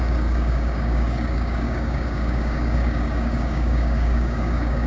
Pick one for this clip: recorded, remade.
remade